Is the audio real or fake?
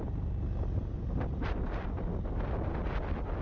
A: real